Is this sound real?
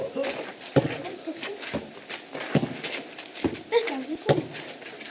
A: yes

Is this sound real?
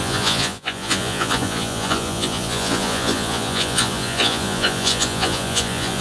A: no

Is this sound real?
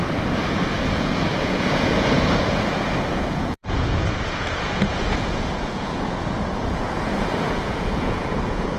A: no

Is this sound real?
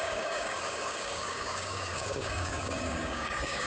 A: no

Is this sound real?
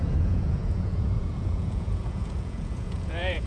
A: no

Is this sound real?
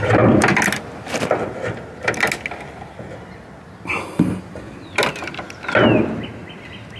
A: yes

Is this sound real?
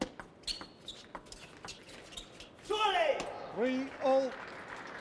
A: yes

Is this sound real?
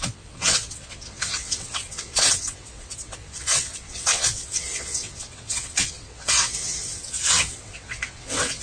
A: no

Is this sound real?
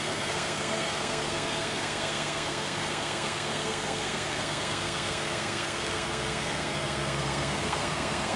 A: no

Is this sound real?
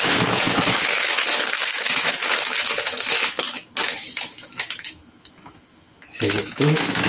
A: no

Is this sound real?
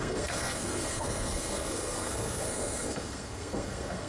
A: no